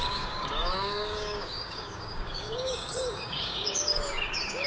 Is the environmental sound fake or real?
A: fake